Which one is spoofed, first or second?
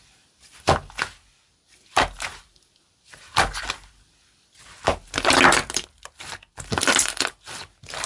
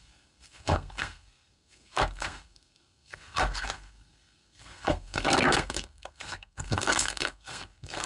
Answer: second